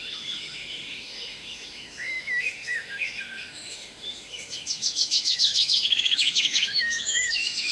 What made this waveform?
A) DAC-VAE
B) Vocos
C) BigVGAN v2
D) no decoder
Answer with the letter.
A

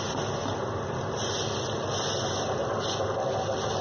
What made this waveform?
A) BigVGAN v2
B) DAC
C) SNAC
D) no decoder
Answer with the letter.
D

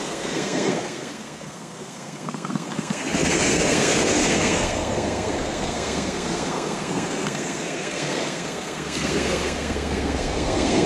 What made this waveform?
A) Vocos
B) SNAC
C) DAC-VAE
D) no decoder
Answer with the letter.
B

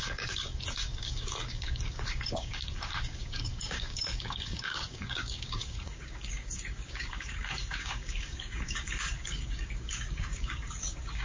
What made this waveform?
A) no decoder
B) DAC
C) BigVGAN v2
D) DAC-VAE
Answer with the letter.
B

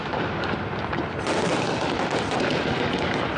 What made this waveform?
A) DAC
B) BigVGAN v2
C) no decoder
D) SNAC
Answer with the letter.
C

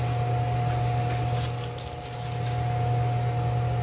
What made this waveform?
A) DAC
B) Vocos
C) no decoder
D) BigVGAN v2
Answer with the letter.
C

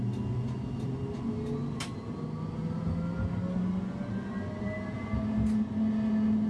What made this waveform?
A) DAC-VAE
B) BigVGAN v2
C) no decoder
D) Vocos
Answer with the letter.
C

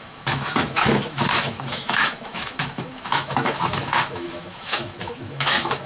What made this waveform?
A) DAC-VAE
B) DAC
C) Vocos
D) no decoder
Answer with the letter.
A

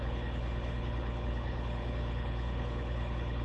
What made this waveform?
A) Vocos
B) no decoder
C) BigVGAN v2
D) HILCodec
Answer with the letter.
D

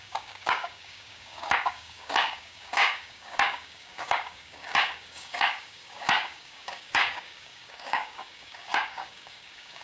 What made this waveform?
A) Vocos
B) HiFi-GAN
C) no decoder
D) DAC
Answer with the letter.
D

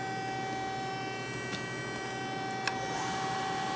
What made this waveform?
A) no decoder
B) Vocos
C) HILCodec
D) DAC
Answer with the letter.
A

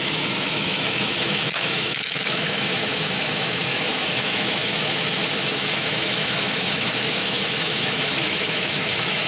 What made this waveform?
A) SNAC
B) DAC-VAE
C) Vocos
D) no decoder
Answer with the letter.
B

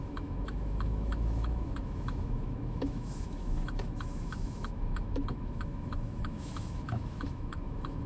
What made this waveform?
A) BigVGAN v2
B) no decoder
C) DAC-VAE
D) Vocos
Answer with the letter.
C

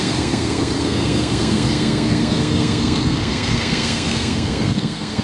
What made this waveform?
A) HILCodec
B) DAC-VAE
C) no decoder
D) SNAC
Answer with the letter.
D